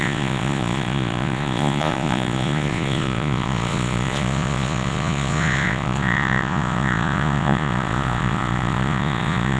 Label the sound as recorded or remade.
remade